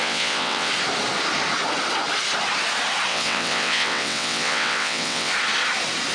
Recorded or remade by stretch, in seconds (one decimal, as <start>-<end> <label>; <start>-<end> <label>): 0.0-0.7 remade; 0.7-3.1 recorded; 3.1-5.3 remade; 5.3-6.1 recorded